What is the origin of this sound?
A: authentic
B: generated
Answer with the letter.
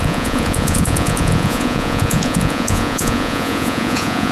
B